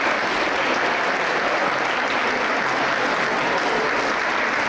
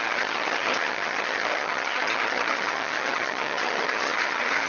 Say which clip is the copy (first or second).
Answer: second